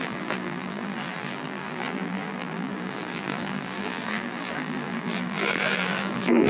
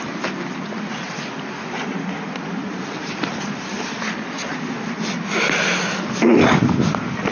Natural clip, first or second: second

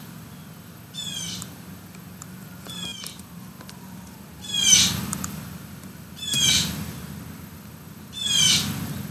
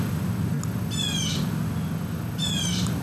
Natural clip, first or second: second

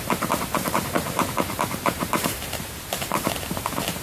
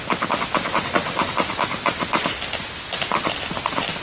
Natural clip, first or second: second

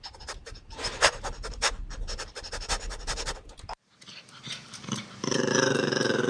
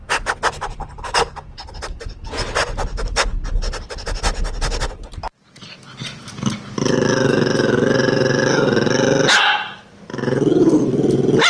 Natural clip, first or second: second